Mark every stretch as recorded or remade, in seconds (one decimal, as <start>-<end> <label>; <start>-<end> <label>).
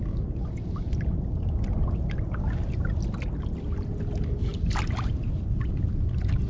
0.0-6.5 recorded